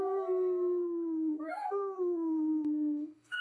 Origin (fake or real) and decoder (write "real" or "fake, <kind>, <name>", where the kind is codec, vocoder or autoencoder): fake, codec, SNAC